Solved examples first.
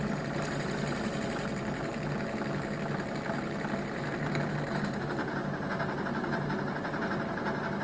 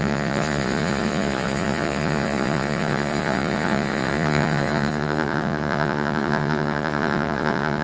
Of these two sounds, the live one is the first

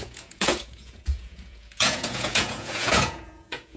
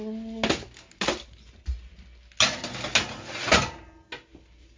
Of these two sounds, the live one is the second